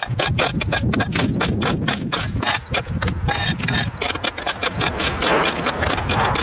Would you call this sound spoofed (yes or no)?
no